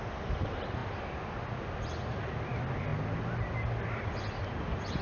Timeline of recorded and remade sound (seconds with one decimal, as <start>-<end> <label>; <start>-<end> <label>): 0.0-5.0 recorded